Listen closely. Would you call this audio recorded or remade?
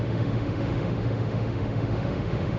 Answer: remade